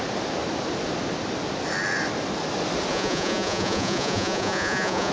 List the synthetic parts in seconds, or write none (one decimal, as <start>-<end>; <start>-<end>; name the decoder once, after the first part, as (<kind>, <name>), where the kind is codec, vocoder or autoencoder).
2.9-5.1 (vocoder, Vocos)